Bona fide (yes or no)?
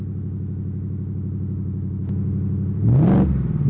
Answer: yes